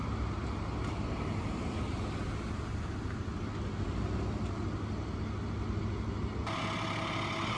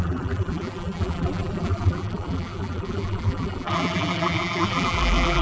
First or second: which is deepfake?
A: second